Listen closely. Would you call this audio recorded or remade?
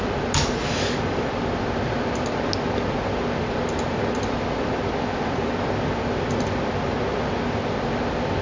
recorded